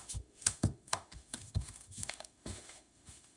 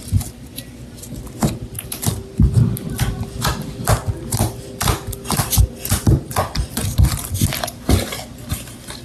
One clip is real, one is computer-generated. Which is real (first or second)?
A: second